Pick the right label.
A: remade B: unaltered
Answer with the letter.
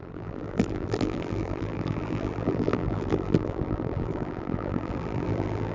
A